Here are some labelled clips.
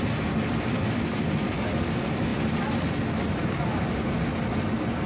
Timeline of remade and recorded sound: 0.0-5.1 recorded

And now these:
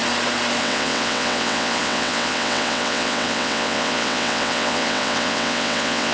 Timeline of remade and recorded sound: 0.0-0.6 recorded; 0.6-6.1 remade

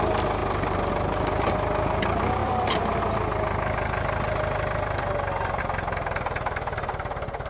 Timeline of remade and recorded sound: 0.0-7.5 recorded

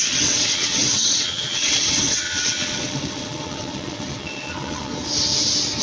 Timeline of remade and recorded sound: 0.0-4.9 remade; 4.9-5.8 recorded

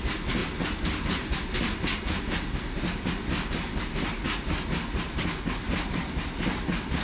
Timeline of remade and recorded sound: 0.0-7.0 recorded